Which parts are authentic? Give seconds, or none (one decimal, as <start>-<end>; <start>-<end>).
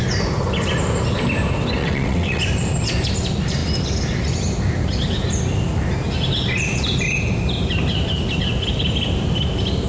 0.0-1.8; 2.4-9.9